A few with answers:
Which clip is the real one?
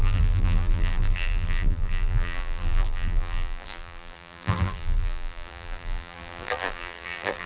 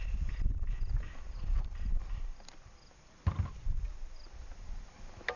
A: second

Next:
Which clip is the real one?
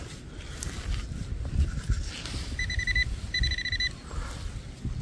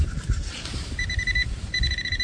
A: first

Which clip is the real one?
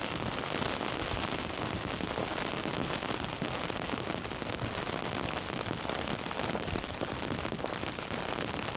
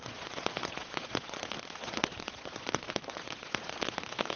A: first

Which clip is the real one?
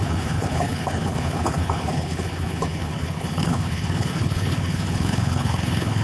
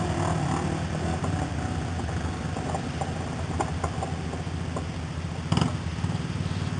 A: second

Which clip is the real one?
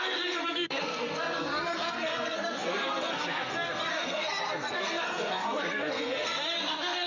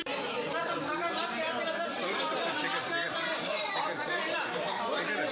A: second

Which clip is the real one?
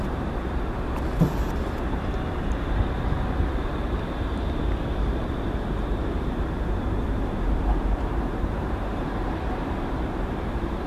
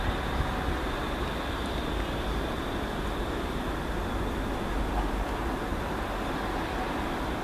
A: second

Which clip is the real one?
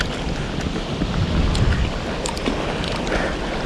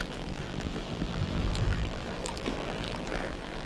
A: first